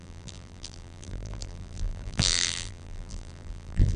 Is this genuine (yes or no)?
no